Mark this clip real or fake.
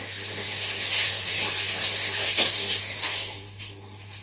fake